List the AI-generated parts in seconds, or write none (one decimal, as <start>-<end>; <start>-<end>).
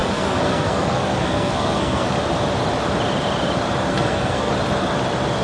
0.0-2.1; 3.9-4.5